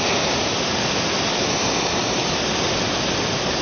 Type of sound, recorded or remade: remade